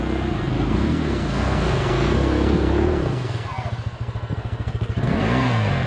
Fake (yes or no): yes